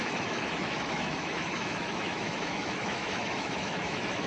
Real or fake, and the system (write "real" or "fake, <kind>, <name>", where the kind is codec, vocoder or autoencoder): fake, autoencoder, DAC-VAE